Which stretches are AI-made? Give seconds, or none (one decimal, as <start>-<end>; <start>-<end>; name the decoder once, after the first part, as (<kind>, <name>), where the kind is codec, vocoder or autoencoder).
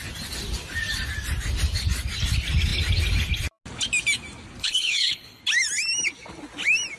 4.6-5.4 (codec, HILCodec)